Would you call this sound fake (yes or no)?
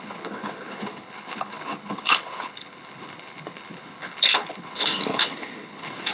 yes